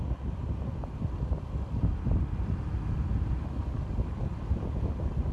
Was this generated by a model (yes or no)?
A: no